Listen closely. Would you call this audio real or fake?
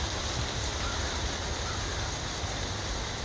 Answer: real